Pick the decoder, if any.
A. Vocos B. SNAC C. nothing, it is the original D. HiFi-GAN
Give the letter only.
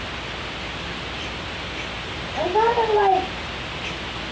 C